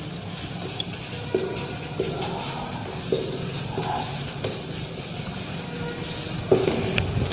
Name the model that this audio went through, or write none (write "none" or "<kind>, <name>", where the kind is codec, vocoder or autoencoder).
none